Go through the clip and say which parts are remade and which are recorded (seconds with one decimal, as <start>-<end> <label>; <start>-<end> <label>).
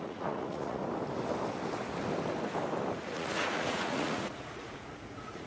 0.0-0.8 remade; 0.8-3.0 recorded; 3.0-5.5 remade